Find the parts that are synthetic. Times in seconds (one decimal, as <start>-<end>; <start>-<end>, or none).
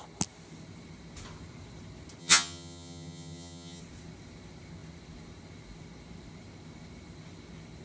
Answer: 2.2-3.8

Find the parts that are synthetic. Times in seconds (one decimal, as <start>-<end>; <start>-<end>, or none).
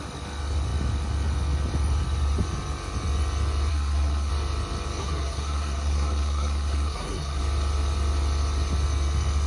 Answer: 3.7-4.3; 5.0-7.4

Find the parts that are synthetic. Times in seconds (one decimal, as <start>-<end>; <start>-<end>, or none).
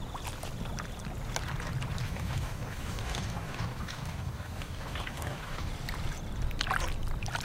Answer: 2.0-5.7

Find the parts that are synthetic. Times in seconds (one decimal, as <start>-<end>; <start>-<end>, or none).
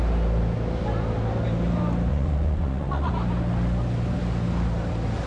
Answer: 2.1-3.1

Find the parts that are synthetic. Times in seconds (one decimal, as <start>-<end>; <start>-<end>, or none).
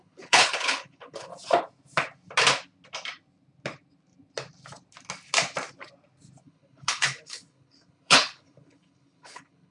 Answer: 0.0-1.3; 6.4-9.7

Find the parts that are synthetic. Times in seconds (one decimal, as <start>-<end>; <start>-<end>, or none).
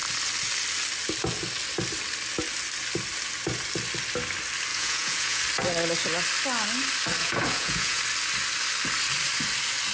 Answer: 4.7-5.4; 7.2-8.0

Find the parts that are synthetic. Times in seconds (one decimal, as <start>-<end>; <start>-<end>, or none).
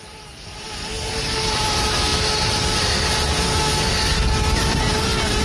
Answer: 0.0-2.1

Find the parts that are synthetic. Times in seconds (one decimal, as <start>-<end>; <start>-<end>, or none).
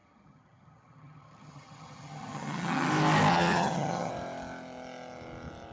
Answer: 0.0-2.9; 3.3-4.1